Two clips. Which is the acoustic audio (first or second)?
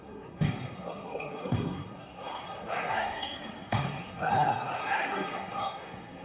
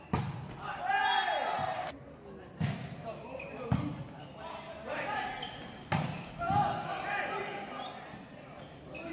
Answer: second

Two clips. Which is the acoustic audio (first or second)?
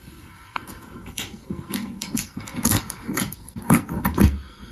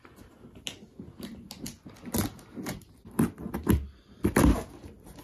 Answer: second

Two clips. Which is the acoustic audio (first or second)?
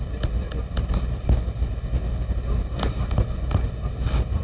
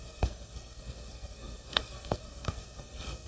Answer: first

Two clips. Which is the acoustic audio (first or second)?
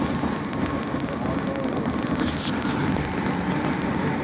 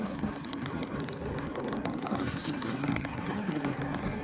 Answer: first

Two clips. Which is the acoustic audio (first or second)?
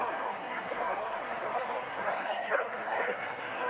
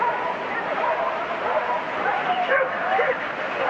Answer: second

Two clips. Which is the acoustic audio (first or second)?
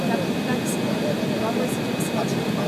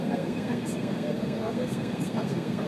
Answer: first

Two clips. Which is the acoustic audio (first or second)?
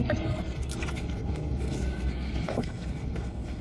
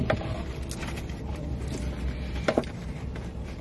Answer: second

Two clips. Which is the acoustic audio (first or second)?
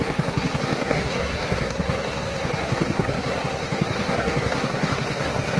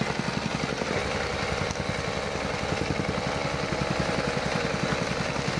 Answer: second